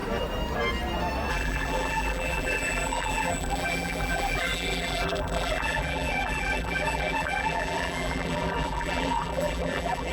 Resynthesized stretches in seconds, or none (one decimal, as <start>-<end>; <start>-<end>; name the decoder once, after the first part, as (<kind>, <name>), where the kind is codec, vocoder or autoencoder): 1.3-10.1 (vocoder, BigVGAN v2)